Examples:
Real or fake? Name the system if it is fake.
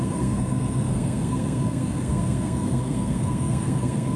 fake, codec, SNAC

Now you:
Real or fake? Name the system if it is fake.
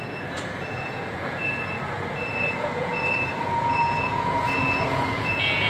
fake, vocoder, Vocos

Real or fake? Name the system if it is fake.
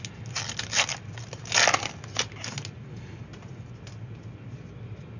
real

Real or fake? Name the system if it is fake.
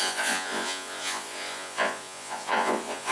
fake, vocoder, Vocos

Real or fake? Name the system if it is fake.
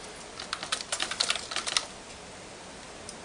real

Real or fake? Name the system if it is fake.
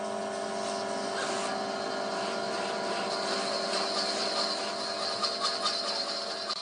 real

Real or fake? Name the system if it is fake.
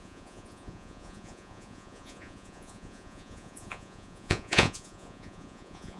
fake, vocoder, Vocos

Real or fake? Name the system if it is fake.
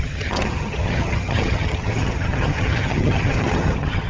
fake, vocoder, HiFi-GAN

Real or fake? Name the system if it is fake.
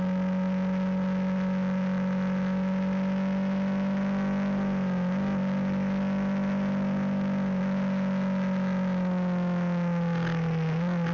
real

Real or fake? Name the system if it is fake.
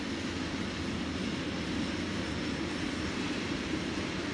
real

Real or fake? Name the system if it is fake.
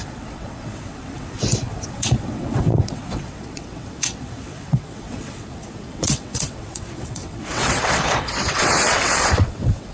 fake, vocoder, WaveNeXt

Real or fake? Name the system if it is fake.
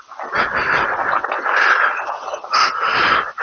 real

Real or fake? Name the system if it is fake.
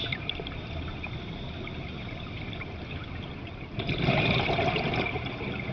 real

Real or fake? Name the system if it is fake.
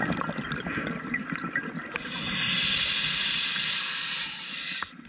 real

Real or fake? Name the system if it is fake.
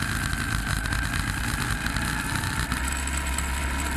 real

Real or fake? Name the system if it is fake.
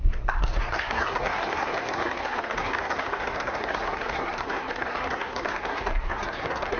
fake, codec, SNAC